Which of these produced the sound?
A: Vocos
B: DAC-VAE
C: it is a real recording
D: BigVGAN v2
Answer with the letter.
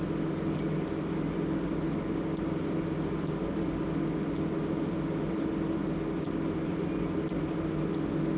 C